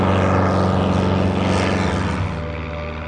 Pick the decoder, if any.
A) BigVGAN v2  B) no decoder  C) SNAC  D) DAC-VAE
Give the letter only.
B